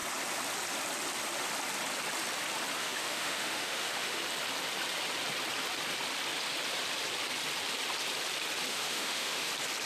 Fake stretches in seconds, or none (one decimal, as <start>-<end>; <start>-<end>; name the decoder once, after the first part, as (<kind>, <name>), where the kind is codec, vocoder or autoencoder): 2.8-4.2 (autoencoder, DAC-VAE); 8.7-9.5